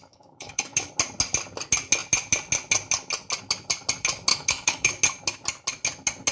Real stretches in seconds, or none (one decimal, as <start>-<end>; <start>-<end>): 0.9-4.3; 4.9-6.3